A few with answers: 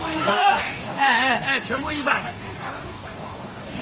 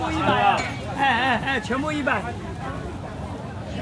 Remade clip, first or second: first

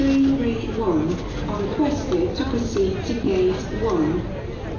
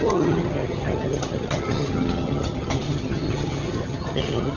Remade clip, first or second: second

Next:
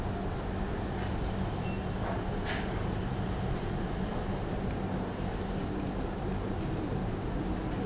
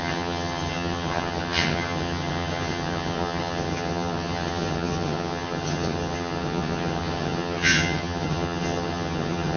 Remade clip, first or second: second